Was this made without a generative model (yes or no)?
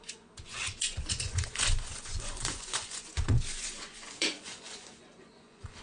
no